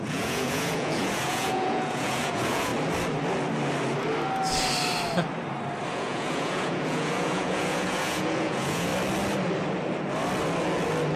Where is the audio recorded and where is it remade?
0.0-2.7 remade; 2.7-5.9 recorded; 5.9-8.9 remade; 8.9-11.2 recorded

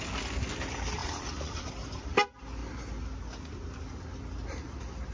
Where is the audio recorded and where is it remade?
0.0-1.0 recorded; 1.0-1.7 remade; 1.7-5.1 recorded

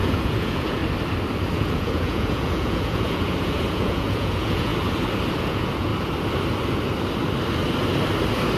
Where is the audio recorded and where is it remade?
0.0-0.8 remade; 0.8-1.5 recorded; 1.5-4.7 remade; 4.7-5.4 recorded; 5.4-5.9 remade; 5.9-8.6 recorded

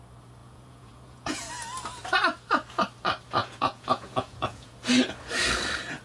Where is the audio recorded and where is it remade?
0.0-0.4 recorded; 0.4-1.5 remade; 1.5-3.4 recorded; 3.4-4.7 remade; 4.7-6.0 recorded

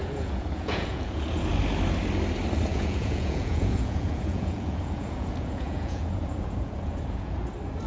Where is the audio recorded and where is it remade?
0.0-1.5 remade; 1.5-2.7 recorded; 2.7-7.4 remade; 7.4-7.9 recorded

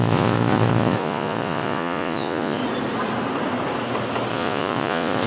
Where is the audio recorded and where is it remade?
0.0-2.6 remade; 2.6-4.3 recorded; 4.3-5.3 remade